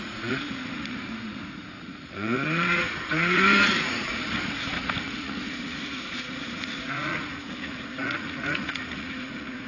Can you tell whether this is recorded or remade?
remade